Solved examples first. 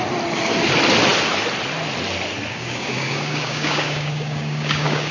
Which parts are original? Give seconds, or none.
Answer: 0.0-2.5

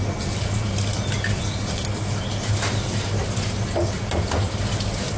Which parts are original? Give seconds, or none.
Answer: 0.0-5.2

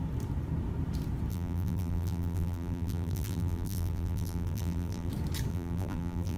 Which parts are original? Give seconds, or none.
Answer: 0.0-1.3; 5.1-5.5

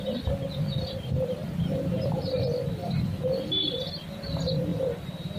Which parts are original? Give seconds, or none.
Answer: 0.0-5.4

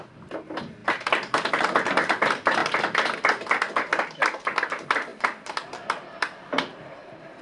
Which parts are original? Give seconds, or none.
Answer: 0.0-7.4

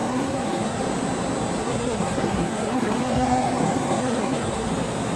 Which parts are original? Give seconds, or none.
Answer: 0.8-1.6; 4.7-5.2

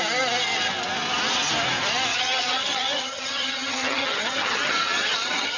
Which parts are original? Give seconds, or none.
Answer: 0.0-2.1

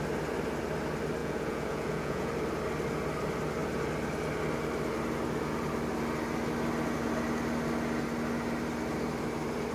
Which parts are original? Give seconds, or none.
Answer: 0.0-1.2; 2.3-9.7